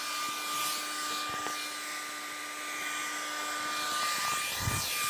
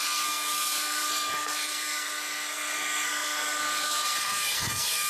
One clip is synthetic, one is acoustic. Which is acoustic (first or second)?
first